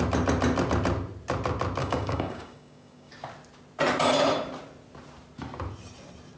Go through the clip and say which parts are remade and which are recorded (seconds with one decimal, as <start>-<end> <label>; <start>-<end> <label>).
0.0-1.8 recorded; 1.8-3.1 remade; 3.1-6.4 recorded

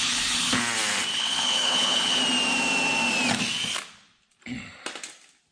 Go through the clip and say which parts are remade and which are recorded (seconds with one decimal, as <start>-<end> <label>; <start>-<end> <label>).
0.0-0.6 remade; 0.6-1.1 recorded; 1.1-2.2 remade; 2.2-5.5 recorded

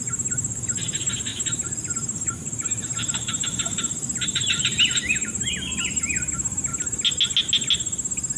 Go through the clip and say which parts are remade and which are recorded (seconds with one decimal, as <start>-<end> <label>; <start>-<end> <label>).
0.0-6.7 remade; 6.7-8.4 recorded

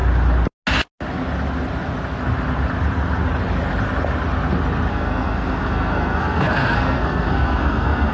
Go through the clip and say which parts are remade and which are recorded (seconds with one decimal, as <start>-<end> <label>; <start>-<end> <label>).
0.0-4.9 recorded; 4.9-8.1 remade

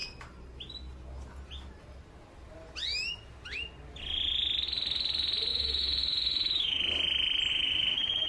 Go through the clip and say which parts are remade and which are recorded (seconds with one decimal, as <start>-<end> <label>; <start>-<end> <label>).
0.0-5.5 recorded; 5.5-6.8 remade; 6.8-7.5 recorded; 7.5-8.3 remade